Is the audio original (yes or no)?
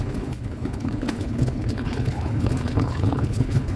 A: no